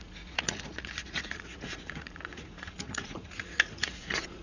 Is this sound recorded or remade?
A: remade